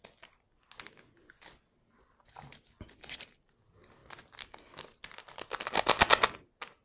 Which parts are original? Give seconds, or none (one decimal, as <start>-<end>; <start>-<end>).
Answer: 0.0-6.8